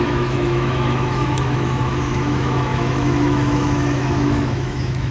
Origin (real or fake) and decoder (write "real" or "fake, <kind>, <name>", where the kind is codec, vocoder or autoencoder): fake, autoencoder, DAC-VAE